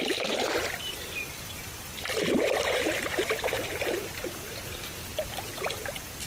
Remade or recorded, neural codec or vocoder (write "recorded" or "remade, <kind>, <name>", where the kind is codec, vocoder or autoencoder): remade, vocoder, BigVGAN v2